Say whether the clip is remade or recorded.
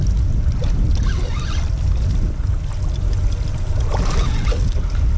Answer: recorded